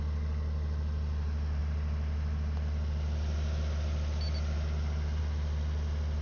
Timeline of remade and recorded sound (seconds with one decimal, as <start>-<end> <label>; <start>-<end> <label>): 0.0-6.2 recorded